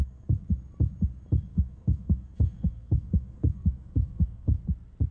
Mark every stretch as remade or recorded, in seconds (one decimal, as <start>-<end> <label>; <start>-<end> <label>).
0.0-0.5 remade; 0.5-1.5 recorded; 1.5-4.6 remade; 4.6-5.1 recorded